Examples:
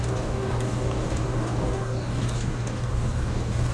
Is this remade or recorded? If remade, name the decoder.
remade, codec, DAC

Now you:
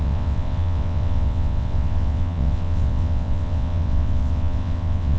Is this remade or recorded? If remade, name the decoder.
remade, vocoder, WaveNeXt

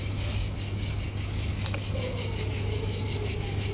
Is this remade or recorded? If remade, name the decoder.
remade, codec, DAC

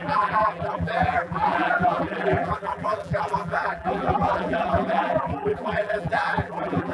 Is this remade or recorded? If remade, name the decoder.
remade, vocoder, BigVGAN v2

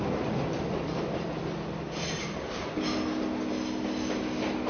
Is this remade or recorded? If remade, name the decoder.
recorded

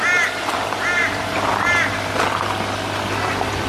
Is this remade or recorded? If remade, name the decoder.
recorded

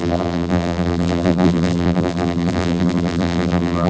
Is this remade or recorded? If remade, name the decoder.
remade, vocoder, BigVGAN v2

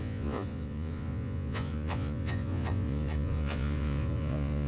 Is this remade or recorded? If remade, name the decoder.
remade, vocoder, Vocos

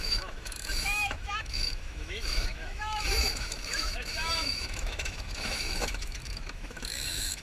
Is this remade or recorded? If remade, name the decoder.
remade, autoencoder, DAC-VAE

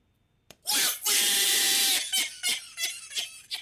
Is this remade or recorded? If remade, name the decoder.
remade, vocoder, BigVGAN v2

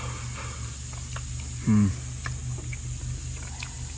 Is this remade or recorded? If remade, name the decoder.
recorded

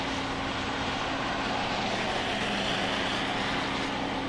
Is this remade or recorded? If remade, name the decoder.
recorded